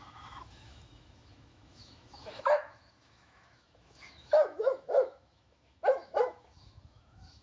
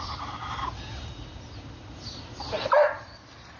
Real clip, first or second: second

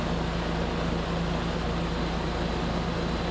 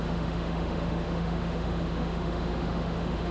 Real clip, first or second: first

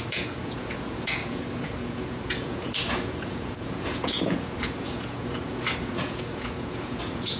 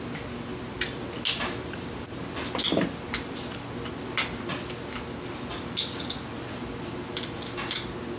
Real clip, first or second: second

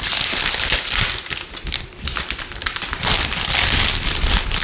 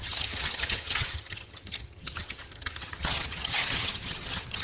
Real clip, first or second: first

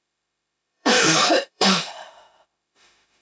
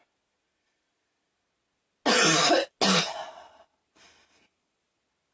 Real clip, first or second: second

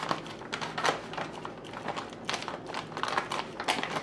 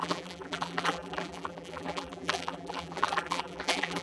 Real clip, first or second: first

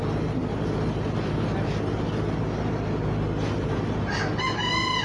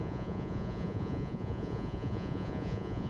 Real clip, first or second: first